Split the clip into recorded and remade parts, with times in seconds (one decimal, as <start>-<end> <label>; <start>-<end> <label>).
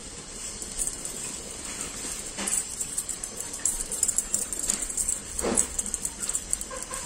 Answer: 0.0-2.5 recorded; 2.5-5.0 remade; 5.0-7.1 recorded